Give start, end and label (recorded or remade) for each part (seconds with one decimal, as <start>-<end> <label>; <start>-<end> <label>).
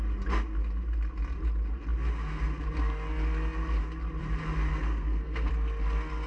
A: 0.0-4.7 recorded; 4.7-5.5 remade; 5.5-6.3 recorded